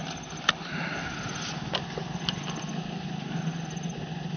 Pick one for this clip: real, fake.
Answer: real